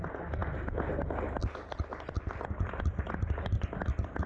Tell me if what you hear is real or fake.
real